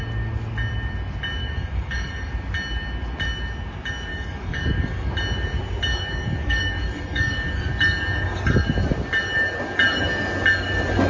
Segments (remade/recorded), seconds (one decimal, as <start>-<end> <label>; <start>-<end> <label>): 0.0-1.4 recorded; 1.4-2.3 remade; 2.3-4.1 recorded; 4.1-5.1 remade; 5.1-5.9 recorded; 5.9-7.6 remade; 7.6-11.1 recorded